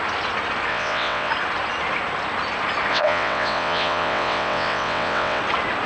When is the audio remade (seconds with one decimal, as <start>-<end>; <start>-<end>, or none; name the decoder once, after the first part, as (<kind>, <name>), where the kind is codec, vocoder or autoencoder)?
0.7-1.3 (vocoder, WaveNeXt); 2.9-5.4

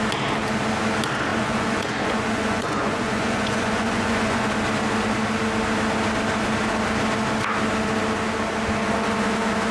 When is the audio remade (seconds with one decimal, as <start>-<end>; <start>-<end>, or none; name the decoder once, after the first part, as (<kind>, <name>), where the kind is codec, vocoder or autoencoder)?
1.3-4.5 (vocoder, Vocos)

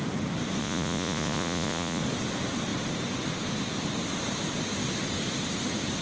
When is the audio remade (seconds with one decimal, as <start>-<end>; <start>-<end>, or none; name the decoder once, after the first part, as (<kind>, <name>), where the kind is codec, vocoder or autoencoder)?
0.6-2.0 (vocoder, Vocos)

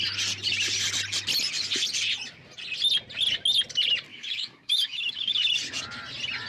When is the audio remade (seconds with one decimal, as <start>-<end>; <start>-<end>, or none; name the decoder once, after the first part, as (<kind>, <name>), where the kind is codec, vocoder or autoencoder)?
4.1-5.3 (autoencoder, DAC-VAE)

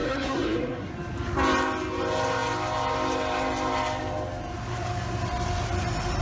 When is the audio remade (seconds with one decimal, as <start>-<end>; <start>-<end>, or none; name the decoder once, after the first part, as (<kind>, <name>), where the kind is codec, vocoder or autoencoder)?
0.0-0.9 (codec, SNAC)